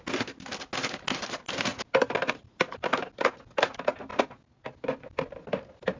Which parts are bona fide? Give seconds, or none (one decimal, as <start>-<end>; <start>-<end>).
0.0-6.0